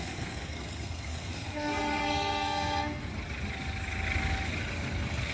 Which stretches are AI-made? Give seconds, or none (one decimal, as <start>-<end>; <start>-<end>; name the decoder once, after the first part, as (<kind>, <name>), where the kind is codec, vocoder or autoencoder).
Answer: 0.0-3.0 (codec, SNAC)